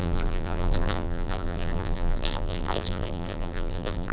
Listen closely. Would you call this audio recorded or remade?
remade